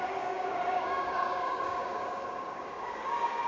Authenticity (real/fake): fake